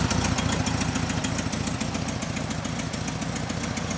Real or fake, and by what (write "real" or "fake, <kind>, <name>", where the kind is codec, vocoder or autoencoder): real